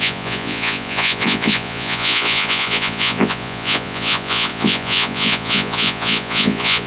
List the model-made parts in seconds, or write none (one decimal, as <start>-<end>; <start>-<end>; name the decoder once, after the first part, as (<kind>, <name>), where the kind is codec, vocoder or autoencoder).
0.0-6.9 (vocoder, Vocos)